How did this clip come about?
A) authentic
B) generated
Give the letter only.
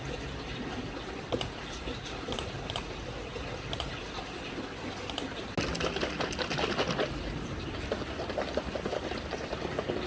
A